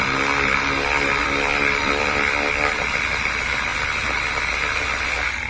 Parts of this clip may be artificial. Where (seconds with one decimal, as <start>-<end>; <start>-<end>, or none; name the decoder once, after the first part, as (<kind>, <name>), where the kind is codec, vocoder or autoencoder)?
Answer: 1.2-2.3 (vocoder, BigVGAN v2)